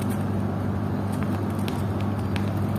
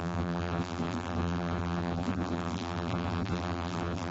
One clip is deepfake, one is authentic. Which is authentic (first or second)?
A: first